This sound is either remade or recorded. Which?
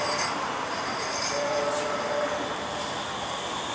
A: recorded